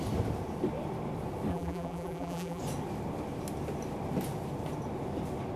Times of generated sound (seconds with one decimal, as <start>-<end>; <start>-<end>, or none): 1.5-2.6